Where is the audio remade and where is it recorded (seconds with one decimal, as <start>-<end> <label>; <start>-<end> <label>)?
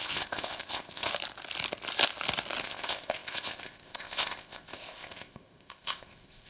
0.0-1.1 remade; 1.1-2.6 recorded; 2.6-6.5 remade